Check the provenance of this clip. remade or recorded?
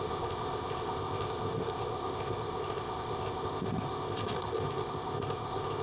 remade